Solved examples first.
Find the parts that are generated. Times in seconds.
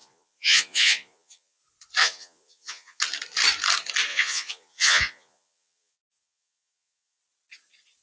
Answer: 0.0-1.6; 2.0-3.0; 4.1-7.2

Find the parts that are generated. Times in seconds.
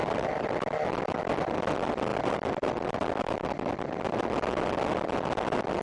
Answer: 0.0-0.5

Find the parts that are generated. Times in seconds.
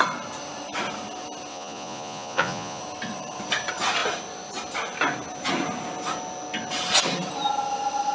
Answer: 1.5-2.8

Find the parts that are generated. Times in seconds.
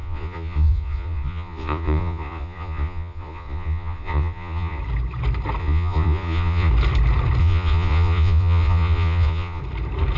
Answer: 0.0-4.8; 5.6-6.7; 7.4-9.6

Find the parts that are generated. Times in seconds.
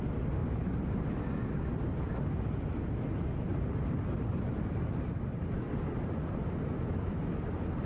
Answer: 3.5-6.8